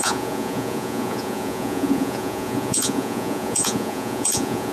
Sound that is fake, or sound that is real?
fake